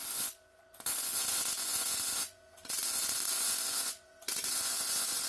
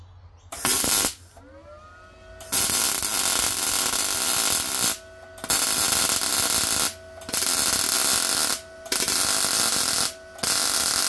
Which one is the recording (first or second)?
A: second